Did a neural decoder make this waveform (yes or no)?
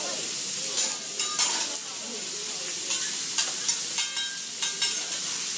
no